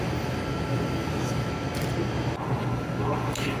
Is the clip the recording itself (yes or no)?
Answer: yes